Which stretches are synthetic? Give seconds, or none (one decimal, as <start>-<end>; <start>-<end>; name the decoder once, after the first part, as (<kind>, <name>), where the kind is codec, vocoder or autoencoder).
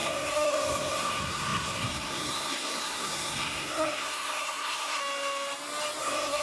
0.0-5.0 (codec, SNAC); 6.0-6.4